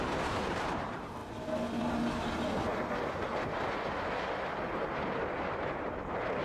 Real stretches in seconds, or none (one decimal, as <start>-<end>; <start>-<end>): 1.2-1.8; 2.7-4.7